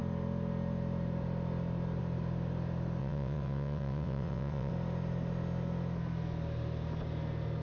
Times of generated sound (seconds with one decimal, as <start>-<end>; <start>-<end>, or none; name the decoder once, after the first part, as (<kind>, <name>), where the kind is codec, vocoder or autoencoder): 3.0-4.7 (vocoder, WaveNeXt)

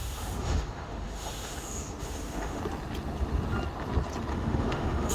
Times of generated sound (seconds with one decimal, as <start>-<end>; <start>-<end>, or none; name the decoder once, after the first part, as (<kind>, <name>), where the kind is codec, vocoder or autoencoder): 0.0-2.6 (autoencoder, DAC-VAE); 4.3-5.1

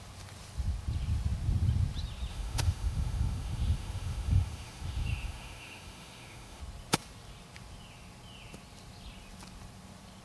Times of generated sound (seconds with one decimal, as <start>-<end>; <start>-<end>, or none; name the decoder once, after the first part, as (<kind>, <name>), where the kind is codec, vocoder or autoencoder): 2.3-6.6 (autoencoder, DAC-VAE)

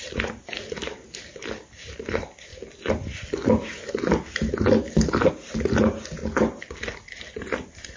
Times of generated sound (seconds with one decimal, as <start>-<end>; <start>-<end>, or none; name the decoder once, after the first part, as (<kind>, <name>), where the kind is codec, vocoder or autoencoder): none

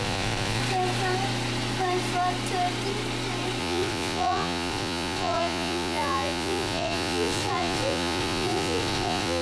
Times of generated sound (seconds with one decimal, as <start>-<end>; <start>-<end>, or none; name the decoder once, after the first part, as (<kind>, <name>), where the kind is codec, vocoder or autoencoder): 0.0-0.6 (vocoder, Vocos); 3.6-9.4

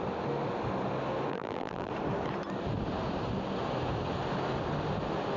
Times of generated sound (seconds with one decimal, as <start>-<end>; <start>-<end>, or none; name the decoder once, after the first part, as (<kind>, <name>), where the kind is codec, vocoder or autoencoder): 1.3-1.9 (vocoder, BigVGAN v2)